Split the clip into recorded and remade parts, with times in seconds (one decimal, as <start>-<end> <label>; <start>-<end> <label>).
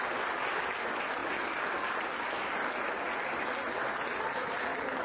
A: 0.0-5.0 recorded